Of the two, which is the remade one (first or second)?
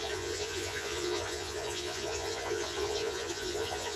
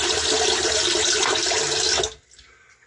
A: first